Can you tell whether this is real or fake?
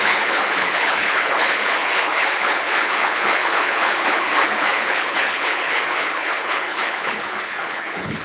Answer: fake